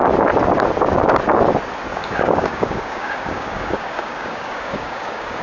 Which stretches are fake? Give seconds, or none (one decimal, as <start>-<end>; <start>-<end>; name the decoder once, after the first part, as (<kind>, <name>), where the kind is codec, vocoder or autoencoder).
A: 1.9-5.4 (codec, DAC)